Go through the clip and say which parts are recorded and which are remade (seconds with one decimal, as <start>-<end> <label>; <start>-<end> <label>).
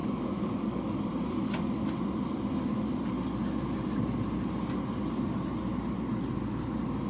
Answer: 0.0-0.8 remade; 0.8-7.1 recorded